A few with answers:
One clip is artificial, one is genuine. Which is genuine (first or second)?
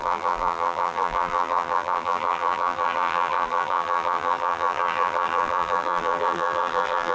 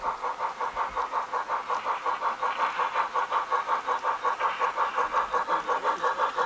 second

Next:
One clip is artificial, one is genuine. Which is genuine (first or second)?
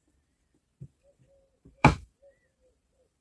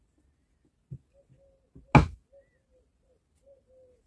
second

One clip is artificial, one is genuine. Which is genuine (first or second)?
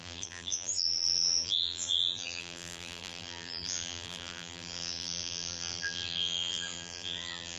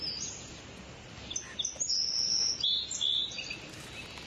second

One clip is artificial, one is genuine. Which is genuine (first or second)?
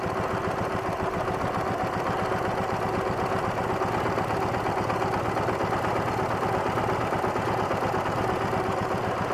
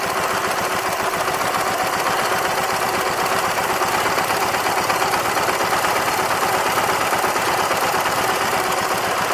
first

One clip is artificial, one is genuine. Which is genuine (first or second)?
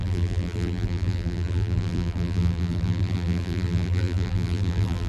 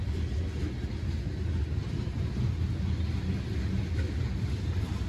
second